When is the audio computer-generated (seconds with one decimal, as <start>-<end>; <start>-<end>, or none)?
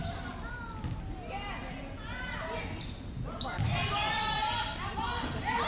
none